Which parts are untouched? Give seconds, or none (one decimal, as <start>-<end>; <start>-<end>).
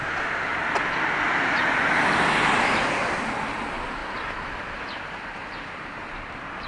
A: 0.0-6.7